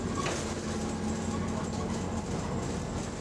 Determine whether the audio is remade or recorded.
recorded